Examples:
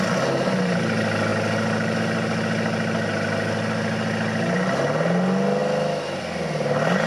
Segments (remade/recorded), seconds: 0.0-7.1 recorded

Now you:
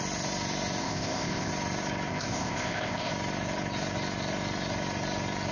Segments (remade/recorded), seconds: 0.0-0.8 recorded; 0.8-1.5 remade; 1.5-2.1 recorded; 2.1-3.1 remade; 3.1-5.5 recorded

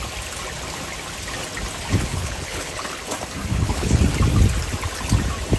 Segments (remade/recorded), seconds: 0.0-2.1 recorded; 2.1-3.0 remade; 3.0-3.5 recorded; 3.5-4.0 remade; 4.0-5.6 recorded

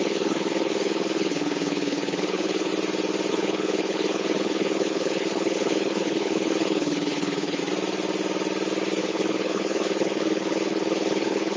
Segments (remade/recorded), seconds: 0.0-2.7 remade; 2.7-3.3 recorded; 3.3-7.6 remade; 7.6-9.0 recorded; 9.0-11.6 remade

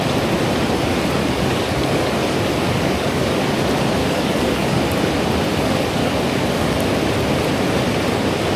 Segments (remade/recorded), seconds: 0.0-1.2 recorded; 1.2-3.4 remade; 3.4-4.0 recorded; 4.0-4.8 remade; 4.8-5.5 recorded; 5.5-6.8 remade; 6.8-8.6 recorded

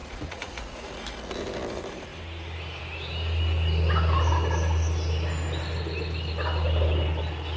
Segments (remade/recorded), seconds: 0.0-0.9 remade; 0.9-7.6 recorded

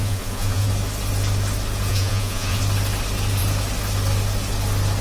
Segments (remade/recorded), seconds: 0.0-0.7 remade; 0.7-1.9 recorded; 1.9-2.6 remade; 2.6-5.0 recorded

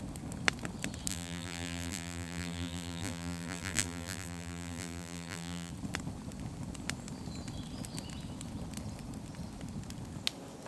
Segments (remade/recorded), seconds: 0.0-1.1 recorded; 1.1-5.7 remade; 5.7-10.7 recorded